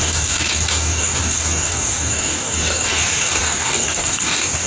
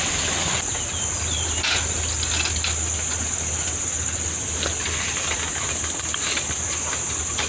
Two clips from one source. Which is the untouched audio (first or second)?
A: second